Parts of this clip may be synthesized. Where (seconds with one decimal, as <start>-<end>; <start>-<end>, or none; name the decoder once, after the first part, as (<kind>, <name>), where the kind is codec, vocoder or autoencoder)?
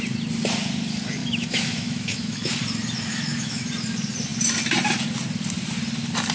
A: 1.2-2.6 (autoencoder, DAC-VAE); 3.1-3.7